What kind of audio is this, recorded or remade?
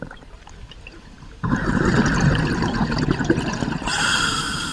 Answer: remade